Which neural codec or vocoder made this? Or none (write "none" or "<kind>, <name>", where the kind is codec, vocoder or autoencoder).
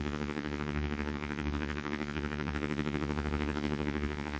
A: vocoder, Vocos